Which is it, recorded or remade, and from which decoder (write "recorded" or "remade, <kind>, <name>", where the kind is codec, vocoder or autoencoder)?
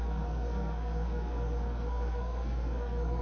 remade, codec, SNAC